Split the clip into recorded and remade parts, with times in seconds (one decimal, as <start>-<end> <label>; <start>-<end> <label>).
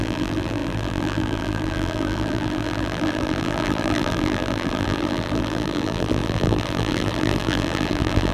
0.0-8.3 remade